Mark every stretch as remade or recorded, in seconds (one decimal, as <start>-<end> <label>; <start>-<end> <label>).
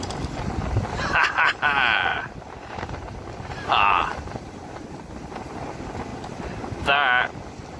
0.0-2.1 recorded; 2.1-3.6 remade; 3.6-6.1 recorded; 6.1-6.7 remade; 6.7-7.8 recorded